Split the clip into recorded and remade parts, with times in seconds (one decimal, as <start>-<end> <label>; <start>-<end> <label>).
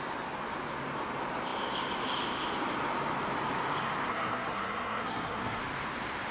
0.0-4.1 recorded; 4.1-5.6 remade; 5.6-6.3 recorded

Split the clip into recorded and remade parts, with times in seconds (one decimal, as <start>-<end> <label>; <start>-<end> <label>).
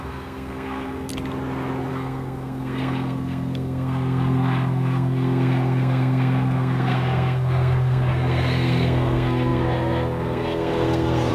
0.0-1.1 remade; 1.1-1.9 recorded; 1.9-11.3 remade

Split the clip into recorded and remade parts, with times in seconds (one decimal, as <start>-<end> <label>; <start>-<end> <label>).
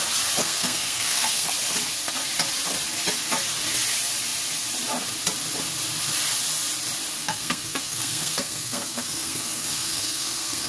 0.0-0.4 recorded; 0.4-1.5 remade; 1.5-7.2 recorded; 7.2-10.7 remade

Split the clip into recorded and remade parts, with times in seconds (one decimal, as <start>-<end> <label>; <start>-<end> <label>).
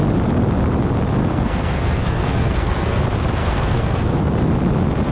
0.0-1.2 recorded; 1.2-3.0 remade; 3.0-3.4 recorded; 3.4-4.3 remade; 4.3-5.1 recorded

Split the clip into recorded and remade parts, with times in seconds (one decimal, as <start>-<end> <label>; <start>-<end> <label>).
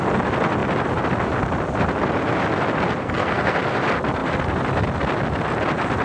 0.0-3.0 recorded; 3.0-3.6 remade; 3.6-6.0 recorded